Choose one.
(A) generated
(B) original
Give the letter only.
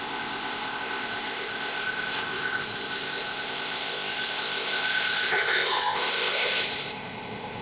A